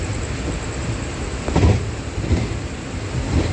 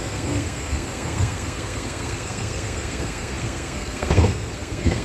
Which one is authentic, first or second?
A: first